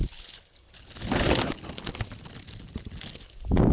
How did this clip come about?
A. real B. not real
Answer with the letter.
A